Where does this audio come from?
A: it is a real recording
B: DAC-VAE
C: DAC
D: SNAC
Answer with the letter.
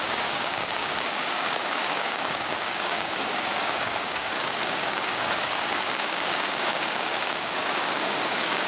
C